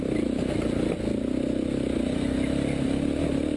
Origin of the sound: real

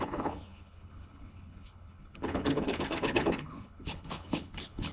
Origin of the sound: fake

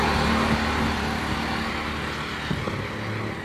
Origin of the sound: real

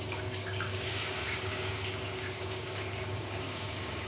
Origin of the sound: fake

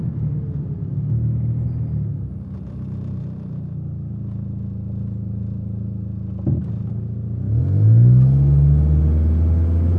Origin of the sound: real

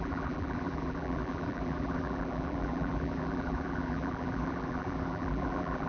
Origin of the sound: fake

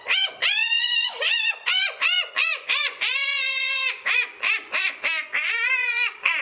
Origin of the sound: fake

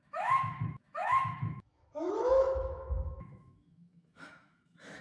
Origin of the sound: fake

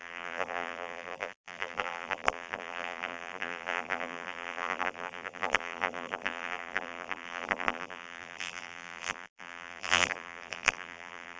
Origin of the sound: fake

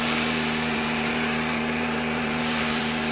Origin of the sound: fake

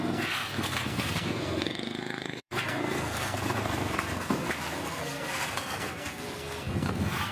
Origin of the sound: fake